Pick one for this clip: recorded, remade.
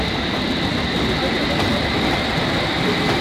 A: recorded